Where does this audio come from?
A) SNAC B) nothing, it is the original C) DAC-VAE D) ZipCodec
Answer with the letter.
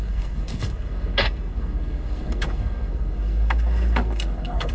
A